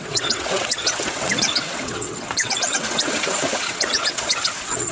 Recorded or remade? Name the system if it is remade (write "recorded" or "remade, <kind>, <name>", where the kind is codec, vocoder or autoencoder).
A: remade, vocoder, WaveNeXt